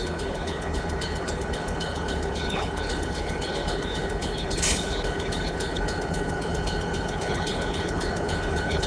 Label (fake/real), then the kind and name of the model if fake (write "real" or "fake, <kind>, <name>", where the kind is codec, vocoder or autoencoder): fake, codec, HILCodec